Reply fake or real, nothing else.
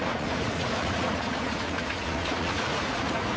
fake